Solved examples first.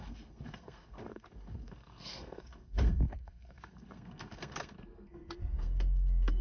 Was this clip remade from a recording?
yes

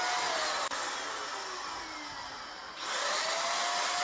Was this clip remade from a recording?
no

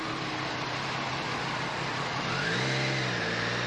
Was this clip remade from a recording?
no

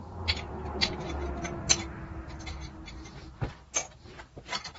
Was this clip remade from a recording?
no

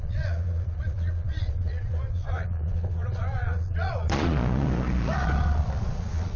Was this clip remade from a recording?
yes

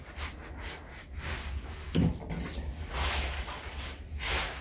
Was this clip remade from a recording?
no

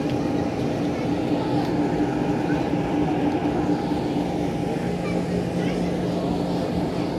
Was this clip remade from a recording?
no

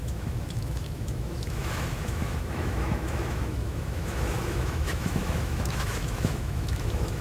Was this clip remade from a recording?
yes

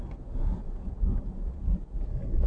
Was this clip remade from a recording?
no